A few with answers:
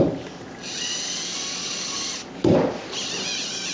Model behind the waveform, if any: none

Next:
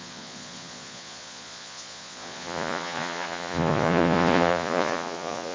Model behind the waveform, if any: vocoder, Vocos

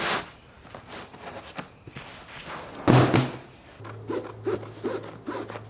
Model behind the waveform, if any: none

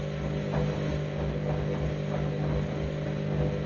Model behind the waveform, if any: none